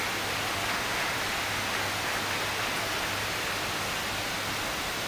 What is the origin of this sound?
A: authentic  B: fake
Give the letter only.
A